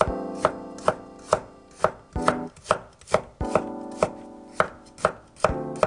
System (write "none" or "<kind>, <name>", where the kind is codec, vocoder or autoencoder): none